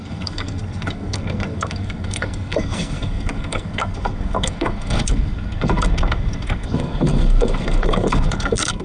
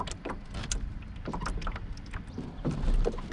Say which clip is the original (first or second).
second